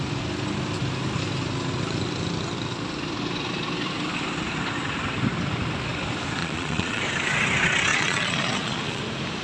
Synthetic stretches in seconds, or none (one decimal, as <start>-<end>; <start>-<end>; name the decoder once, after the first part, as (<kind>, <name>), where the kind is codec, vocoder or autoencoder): 6.4-7.0 (vocoder, Vocos); 7.9-9.0